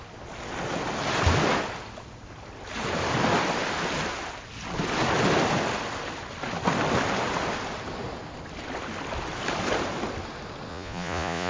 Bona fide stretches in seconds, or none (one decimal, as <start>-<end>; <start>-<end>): 0.0-10.7